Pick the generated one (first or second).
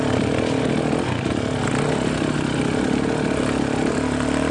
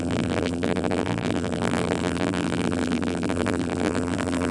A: second